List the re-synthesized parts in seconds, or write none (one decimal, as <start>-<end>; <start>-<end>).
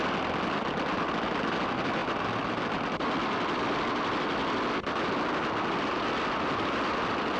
none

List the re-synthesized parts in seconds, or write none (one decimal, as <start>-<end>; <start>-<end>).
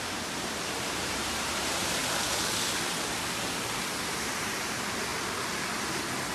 0.0-2.0; 3.9-5.1